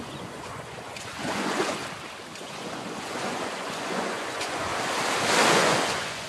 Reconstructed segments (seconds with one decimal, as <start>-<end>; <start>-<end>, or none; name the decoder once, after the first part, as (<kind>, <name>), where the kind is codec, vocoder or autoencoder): 0.0-1.8 (vocoder, Vocos); 2.4-4.7; 5.5-6.3